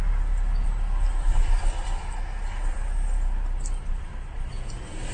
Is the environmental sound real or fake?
real